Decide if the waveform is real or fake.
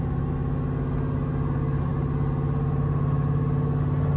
real